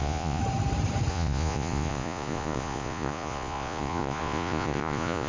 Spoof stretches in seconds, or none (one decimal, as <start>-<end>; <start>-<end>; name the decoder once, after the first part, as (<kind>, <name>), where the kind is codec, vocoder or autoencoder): 0.0-0.4 (vocoder, Vocos); 1.1-5.3